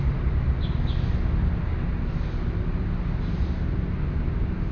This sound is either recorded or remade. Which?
recorded